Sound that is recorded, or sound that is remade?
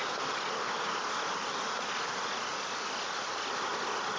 recorded